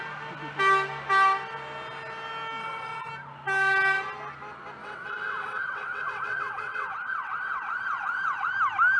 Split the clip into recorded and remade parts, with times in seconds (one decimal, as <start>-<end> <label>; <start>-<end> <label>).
0.0-2.6 recorded; 2.6-3.1 remade; 3.1-4.8 recorded; 4.8-8.5 remade; 8.5-9.0 recorded